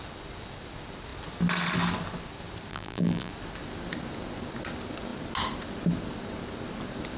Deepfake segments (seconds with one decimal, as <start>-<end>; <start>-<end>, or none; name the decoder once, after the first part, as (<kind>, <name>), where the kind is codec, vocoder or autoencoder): 2.7-3.3 (vocoder, BigVGAN v2)

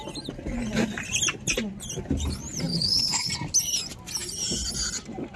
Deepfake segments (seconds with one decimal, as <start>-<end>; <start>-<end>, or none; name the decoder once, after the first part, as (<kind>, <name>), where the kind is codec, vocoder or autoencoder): 2.7-3.3 (codec, HILCodec)

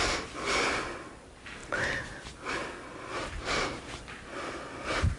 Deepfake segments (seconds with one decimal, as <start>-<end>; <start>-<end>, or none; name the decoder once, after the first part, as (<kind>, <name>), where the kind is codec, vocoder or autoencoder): none

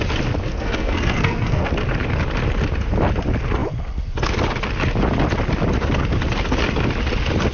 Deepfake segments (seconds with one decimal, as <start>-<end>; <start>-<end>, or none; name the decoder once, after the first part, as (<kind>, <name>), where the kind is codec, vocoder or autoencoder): 0.5-1.7 (codec, SNAC)